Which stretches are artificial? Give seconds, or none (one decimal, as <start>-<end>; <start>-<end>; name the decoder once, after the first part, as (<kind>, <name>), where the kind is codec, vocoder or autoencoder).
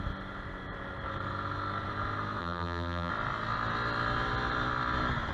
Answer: 2.4-3.1 (vocoder, BigVGAN v2)